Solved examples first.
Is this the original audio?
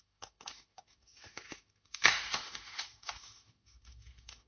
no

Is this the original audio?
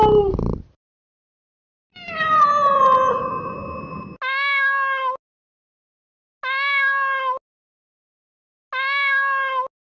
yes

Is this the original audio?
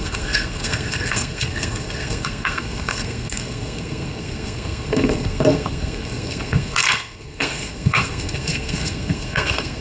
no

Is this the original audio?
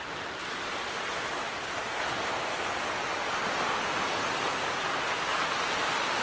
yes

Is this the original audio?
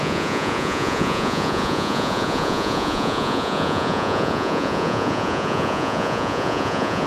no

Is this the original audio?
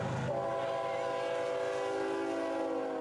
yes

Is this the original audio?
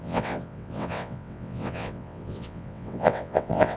no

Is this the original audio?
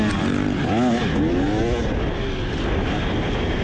yes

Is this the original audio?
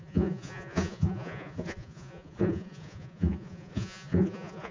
no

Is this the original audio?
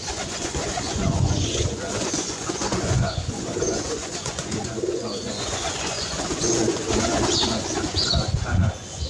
no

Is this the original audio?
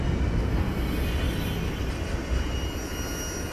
yes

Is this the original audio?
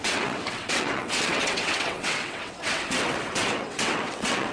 no